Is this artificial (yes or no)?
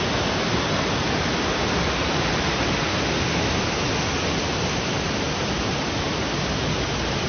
no